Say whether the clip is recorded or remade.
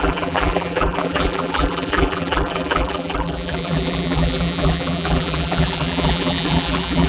remade